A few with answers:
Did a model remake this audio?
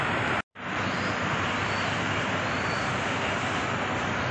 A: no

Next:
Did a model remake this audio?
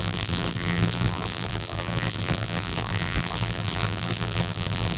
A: yes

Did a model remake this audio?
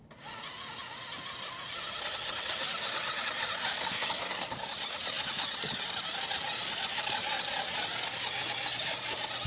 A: no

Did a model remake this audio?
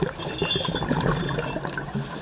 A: no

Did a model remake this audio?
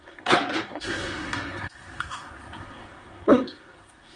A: yes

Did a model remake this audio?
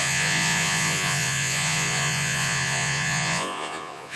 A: yes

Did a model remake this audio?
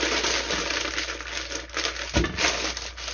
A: no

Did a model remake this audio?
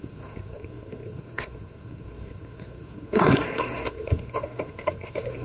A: yes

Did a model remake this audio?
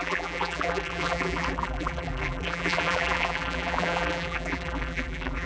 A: yes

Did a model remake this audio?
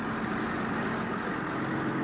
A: no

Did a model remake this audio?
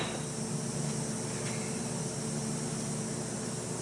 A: no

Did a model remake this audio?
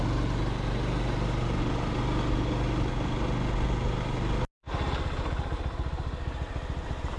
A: no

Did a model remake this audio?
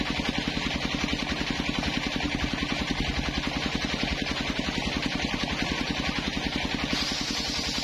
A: no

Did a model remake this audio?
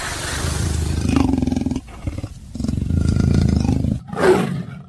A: yes